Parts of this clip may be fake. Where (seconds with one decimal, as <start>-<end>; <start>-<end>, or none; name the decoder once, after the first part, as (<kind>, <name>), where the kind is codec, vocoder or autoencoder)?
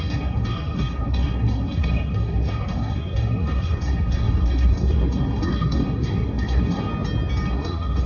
0.0-6.9 (codec, SNAC); 7.5-8.1